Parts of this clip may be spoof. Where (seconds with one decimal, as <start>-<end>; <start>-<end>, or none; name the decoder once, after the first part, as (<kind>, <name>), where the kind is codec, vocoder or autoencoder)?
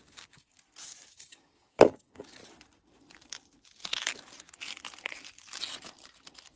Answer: 0.0-0.5 (codec, DAC); 1.1-2.4